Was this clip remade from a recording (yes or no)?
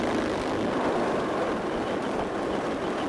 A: no